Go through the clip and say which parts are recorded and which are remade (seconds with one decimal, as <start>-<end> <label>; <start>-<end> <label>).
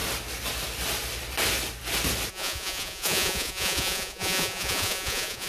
0.0-2.3 recorded; 2.3-5.5 remade